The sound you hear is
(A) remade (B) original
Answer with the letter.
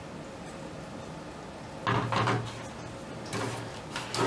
B